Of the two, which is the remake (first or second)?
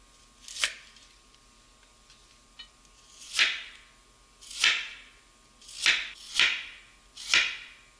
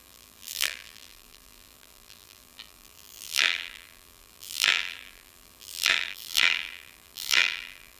second